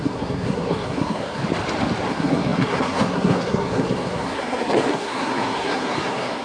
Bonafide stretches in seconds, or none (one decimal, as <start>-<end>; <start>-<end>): 1.4-2.1